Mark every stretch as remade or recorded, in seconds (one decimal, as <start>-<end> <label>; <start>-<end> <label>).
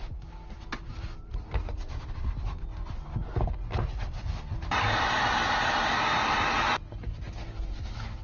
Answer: 0.0-8.2 recorded